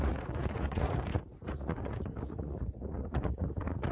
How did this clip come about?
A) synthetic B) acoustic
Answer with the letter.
A